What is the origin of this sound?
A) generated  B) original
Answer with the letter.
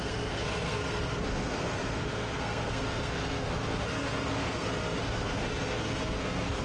A